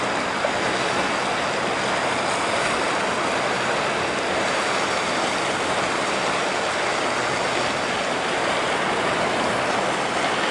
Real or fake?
real